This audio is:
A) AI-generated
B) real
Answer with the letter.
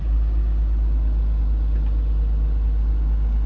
B